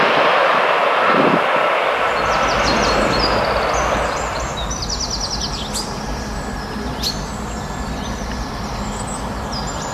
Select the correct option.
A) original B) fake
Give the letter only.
A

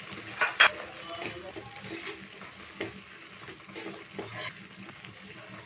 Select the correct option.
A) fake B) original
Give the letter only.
B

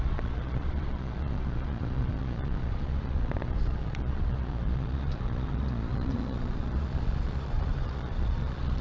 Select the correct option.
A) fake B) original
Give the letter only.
A